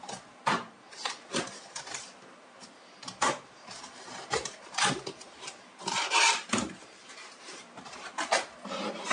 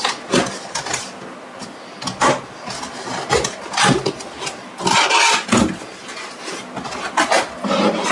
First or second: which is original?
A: second